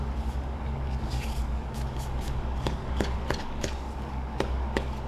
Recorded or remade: remade